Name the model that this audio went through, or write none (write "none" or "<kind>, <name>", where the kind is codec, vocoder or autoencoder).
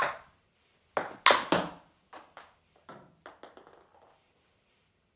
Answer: none